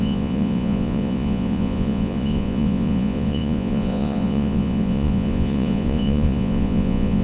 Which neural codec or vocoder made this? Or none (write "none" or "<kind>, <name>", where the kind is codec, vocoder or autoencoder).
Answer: vocoder, Vocos